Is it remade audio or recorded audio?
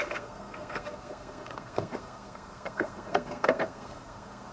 remade